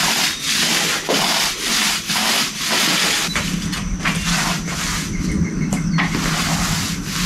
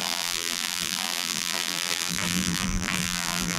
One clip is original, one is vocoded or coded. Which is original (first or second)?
first